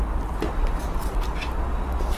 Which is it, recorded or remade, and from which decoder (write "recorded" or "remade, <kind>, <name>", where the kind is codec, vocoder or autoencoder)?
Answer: recorded